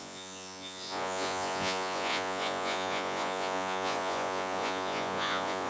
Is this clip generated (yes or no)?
yes